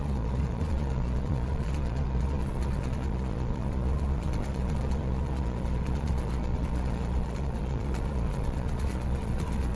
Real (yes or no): no